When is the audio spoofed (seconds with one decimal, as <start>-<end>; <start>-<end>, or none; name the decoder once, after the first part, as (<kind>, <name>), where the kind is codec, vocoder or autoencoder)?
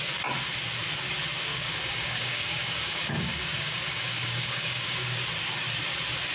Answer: 1.5-5.2 (codec, DAC)